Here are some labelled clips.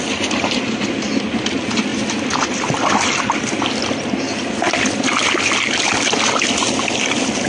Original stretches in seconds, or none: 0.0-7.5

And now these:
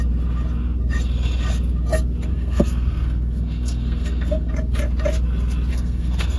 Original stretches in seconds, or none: 0.0-2.3; 4.5-5.7

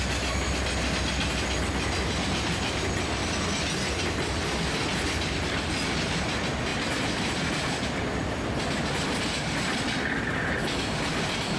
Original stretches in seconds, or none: 0.0-6.7; 8.6-11.6